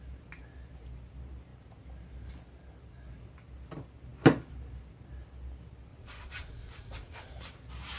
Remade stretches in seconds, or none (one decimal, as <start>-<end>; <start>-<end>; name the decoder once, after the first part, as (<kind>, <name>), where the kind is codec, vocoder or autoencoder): 5.9-7.3 (vocoder, Vocos)